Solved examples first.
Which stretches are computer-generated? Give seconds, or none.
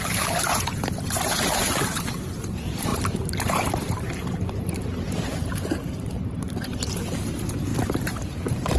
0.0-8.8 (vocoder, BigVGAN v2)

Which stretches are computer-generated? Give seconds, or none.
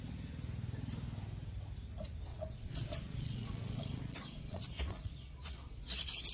2.3-6.3 (vocoder, Vocos)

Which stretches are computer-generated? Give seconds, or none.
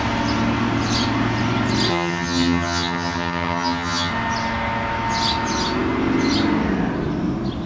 1.9-4.1 (vocoder, HiFi-GAN)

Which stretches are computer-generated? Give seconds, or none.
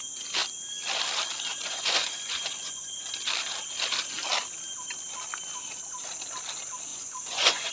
1.5-3.2 (vocoder, Vocos); 6.9-7.7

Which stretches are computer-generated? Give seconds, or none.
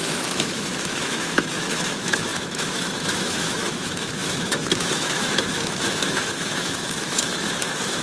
0.0-8.0 (autoencoder, DAC-VAE)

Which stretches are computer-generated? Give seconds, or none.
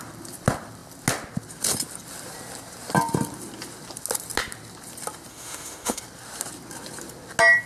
5.3-6.0 (autoencoder, DAC-VAE)